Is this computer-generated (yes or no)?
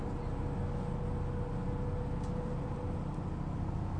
no